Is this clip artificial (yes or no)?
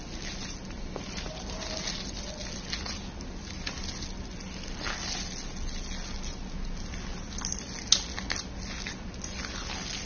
no